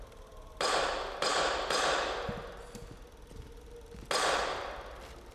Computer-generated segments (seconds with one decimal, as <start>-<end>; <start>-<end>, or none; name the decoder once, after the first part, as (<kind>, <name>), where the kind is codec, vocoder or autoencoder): none